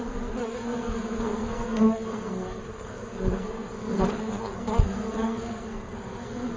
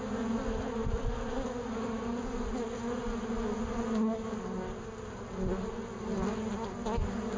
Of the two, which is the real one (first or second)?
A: second